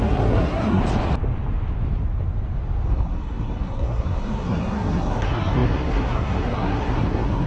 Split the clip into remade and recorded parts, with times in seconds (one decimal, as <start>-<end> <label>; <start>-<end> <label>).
0.0-0.8 remade; 0.8-2.9 recorded; 2.9-7.5 remade